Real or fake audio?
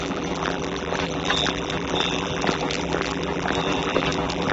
fake